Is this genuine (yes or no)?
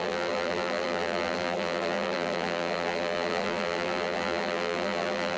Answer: no